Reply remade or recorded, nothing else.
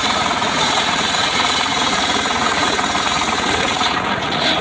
remade